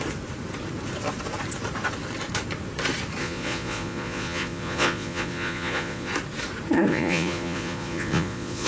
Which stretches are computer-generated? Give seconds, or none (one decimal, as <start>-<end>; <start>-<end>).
3.2-6.1; 6.9-8.7